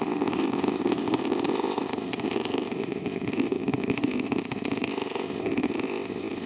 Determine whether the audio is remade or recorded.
remade